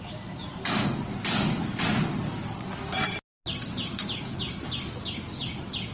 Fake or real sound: real